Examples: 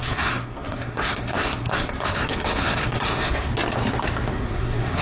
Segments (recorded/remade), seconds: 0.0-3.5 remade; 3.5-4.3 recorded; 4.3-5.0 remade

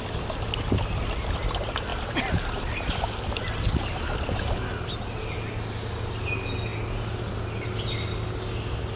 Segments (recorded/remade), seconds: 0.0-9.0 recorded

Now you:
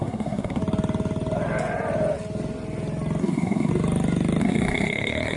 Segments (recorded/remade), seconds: 0.0-0.6 remade; 0.6-3.2 recorded; 3.2-3.7 remade; 3.7-4.4 recorded; 4.4-5.4 remade